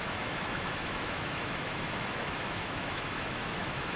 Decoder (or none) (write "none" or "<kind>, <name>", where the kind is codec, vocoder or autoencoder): autoencoder, DAC-VAE